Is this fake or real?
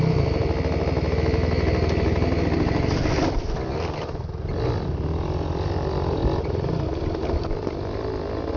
real